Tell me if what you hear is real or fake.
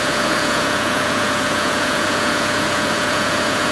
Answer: fake